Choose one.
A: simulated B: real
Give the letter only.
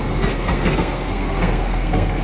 A